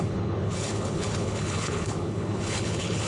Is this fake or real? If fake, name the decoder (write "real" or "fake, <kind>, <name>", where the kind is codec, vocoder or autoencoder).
fake, codec, HILCodec